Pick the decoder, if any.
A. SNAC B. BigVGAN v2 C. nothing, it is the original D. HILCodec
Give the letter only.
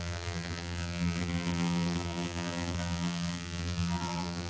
B